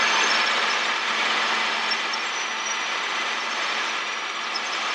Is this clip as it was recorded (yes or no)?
yes